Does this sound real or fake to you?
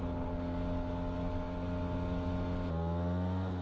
real